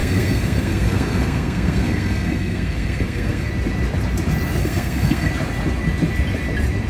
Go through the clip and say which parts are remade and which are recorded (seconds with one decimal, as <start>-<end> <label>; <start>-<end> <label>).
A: 0.0-3.5 remade; 3.5-4.6 recorded; 4.6-5.3 remade; 5.3-6.9 recorded